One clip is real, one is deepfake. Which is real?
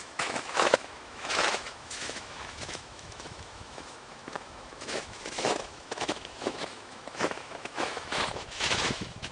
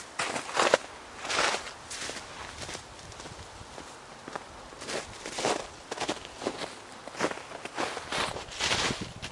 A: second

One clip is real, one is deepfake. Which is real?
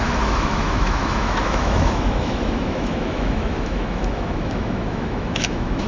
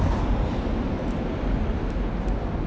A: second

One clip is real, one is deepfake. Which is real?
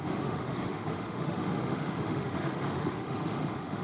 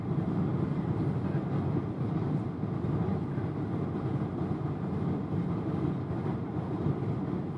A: second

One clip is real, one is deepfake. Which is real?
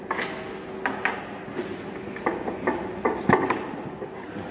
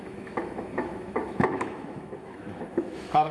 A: first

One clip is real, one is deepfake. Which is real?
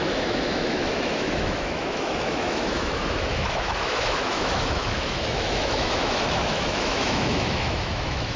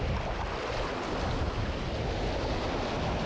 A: second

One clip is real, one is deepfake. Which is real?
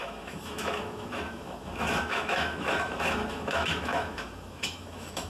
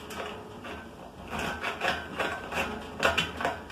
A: second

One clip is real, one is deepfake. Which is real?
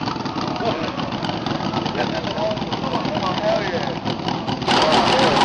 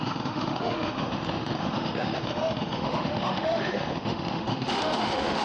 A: first